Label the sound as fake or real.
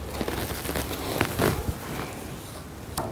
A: real